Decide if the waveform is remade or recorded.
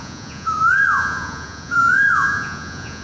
remade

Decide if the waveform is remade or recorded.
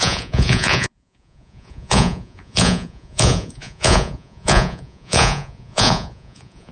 remade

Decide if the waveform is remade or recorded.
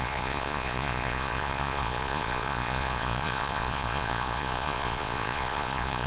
remade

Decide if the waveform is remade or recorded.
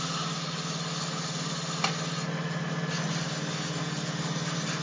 recorded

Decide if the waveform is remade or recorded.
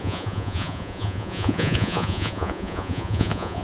remade